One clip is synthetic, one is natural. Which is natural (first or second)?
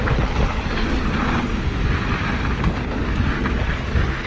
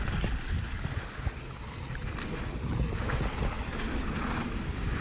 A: first